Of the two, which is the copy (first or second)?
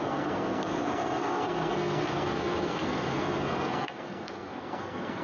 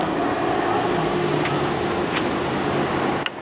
first